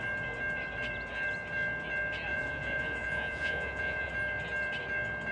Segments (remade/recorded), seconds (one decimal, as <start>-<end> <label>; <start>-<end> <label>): 0.0-2.3 recorded; 2.3-4.1 remade; 4.1-5.3 recorded